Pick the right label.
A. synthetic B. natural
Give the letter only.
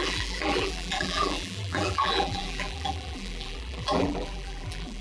A